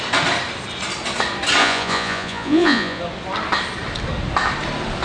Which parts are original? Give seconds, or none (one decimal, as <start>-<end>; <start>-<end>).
0.0-1.6; 3.0-5.0